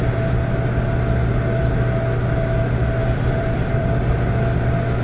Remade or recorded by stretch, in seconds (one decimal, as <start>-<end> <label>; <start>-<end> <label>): 0.0-3.0 recorded; 3.0-3.9 remade; 3.9-5.0 recorded